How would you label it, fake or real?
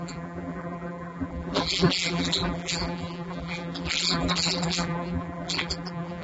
fake